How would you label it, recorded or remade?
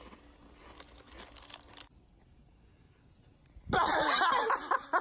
recorded